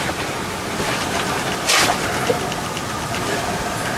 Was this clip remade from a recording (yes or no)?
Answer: no